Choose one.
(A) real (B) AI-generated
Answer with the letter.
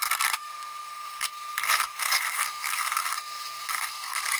B